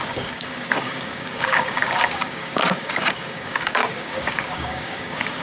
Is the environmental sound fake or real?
fake